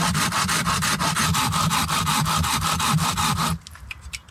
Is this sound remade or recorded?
recorded